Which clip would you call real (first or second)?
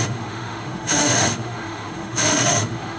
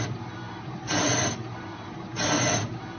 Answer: second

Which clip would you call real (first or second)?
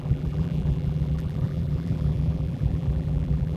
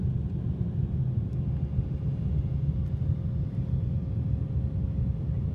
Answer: second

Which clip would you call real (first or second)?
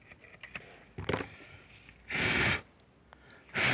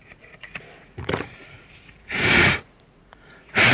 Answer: first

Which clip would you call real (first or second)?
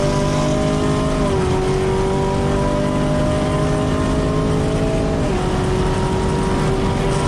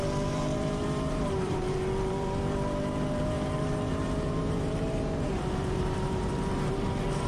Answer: first